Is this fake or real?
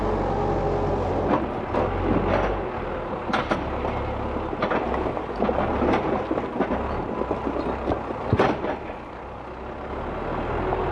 real